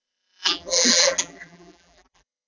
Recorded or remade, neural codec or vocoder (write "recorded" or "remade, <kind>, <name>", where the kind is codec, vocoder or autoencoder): remade, vocoder, BigVGAN v2